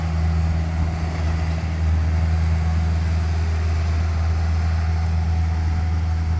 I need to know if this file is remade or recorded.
recorded